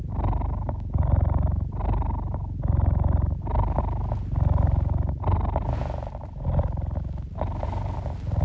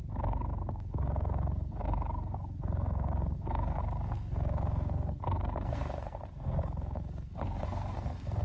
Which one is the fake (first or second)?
second